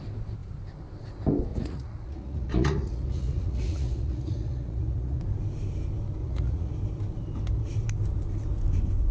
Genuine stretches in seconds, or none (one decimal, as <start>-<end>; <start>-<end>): 0.0-1.5; 5.2-6.2; 6.7-9.1